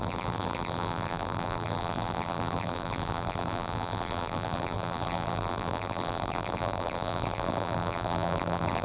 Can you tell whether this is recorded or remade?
remade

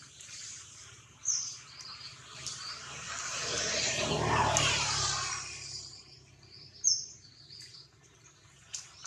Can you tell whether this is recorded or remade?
remade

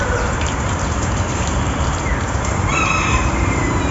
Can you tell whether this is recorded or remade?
remade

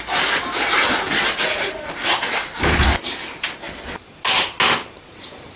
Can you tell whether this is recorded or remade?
recorded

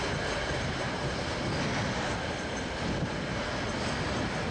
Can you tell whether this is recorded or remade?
recorded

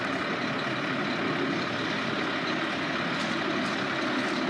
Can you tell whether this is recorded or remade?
recorded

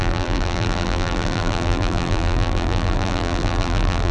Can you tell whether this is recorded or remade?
remade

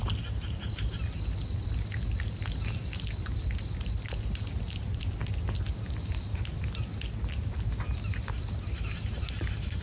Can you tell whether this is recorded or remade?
recorded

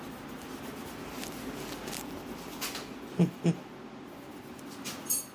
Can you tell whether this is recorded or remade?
remade